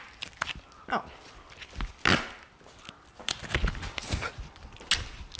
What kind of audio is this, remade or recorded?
recorded